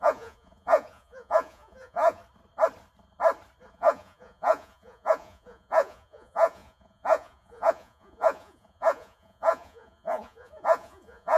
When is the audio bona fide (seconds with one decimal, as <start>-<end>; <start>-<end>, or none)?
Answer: 2.2-3.7